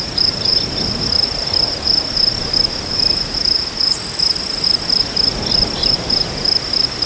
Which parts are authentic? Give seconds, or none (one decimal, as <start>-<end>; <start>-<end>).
0.0-7.1